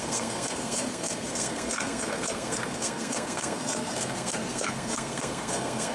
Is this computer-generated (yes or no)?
yes